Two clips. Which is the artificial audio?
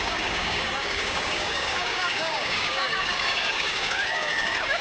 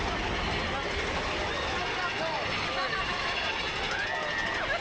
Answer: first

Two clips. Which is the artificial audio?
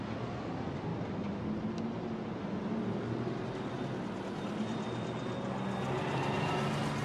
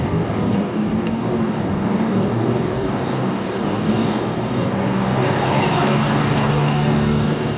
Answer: second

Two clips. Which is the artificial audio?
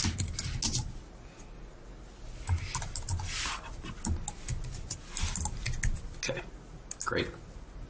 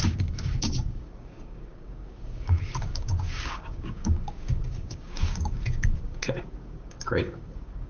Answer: second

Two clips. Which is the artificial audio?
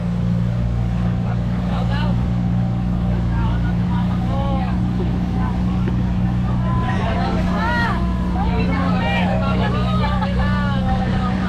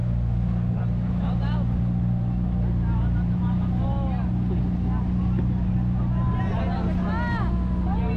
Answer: first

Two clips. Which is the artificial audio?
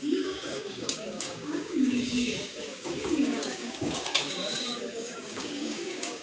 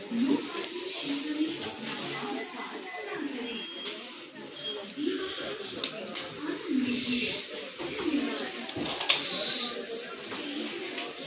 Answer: first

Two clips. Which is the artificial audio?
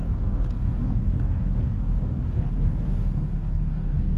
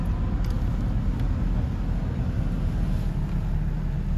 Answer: first